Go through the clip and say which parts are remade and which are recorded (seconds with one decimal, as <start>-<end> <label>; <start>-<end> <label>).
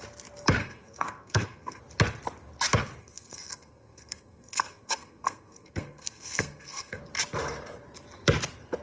0.0-0.6 recorded; 0.6-1.8 remade; 1.8-3.0 recorded; 3.0-7.0 remade; 7.0-8.8 recorded